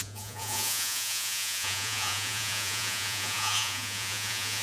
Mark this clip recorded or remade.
remade